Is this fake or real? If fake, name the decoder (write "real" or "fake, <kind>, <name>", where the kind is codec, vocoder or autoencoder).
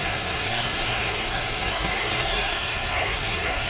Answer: fake, codec, SNAC